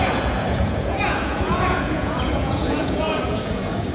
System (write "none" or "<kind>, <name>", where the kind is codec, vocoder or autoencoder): vocoder, Vocos